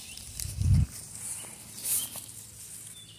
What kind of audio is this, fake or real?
real